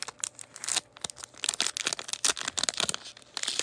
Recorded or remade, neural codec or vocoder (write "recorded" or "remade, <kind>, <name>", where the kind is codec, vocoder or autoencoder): recorded